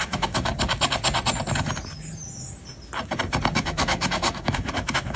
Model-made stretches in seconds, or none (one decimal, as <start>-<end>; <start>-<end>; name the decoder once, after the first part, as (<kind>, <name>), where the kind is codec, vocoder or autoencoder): 0.0-0.5 (autoencoder, DAC-VAE); 3.6-5.2